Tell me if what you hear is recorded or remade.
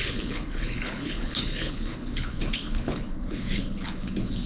remade